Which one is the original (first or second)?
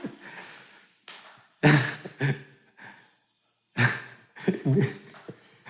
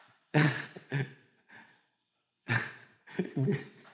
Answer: first